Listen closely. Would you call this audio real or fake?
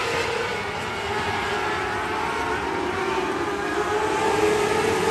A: real